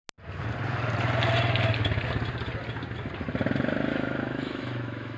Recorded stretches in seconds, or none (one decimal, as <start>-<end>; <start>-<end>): 0.0-3.9